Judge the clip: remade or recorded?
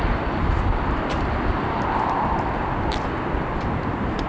recorded